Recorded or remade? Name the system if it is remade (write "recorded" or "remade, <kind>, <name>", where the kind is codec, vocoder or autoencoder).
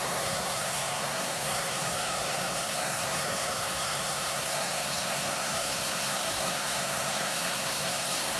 remade, codec, SNAC